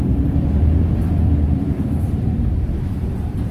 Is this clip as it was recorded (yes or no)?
no